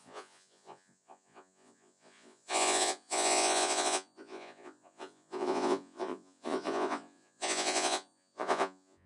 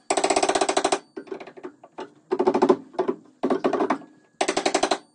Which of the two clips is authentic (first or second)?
second